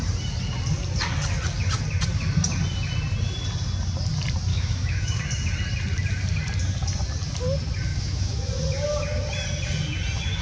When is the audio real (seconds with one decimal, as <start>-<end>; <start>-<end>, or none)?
0.0-4.5; 5.2-7.9; 8.5-10.4